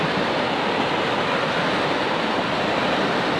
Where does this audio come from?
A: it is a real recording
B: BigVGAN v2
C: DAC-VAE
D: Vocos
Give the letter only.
A